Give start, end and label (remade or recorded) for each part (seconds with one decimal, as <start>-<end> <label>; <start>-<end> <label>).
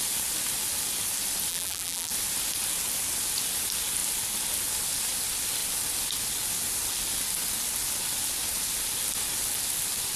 0.0-1.5 recorded; 1.5-2.1 remade; 2.1-10.2 recorded